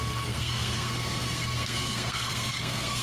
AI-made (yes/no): yes